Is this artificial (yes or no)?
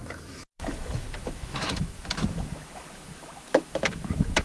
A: yes